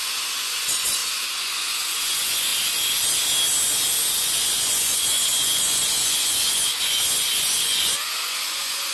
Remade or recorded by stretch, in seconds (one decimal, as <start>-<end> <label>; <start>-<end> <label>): 0.0-2.5 remade; 2.5-4.1 recorded; 4.1-8.9 remade